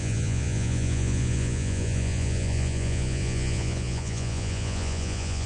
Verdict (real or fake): fake